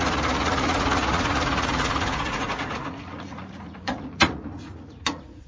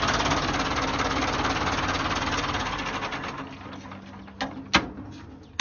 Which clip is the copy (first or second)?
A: first